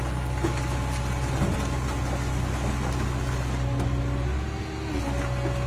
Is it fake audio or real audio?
real